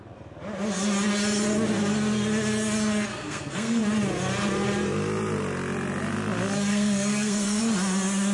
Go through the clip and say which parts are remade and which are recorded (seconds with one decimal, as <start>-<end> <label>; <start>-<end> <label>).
0.0-3.1 recorded; 3.1-3.8 remade; 3.8-6.7 recorded; 6.7-7.6 remade; 7.6-8.3 recorded